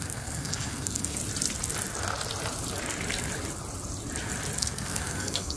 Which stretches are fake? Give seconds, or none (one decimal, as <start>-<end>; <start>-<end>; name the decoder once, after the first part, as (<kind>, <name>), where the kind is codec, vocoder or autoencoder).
0.0-1.2 (codec, SNAC); 4.6-5.6

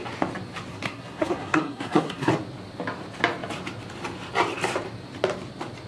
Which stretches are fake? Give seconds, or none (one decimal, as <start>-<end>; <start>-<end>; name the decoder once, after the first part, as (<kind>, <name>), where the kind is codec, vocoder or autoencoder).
0.7-2.3 (codec, SNAC)